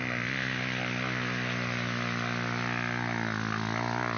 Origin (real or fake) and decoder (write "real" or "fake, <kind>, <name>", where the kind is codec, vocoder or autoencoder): real